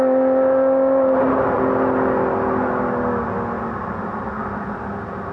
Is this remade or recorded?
recorded